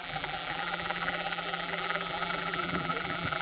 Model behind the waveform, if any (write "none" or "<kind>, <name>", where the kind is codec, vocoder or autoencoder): vocoder, BigVGAN v2